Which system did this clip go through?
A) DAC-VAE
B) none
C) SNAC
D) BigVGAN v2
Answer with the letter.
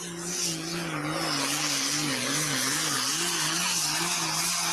B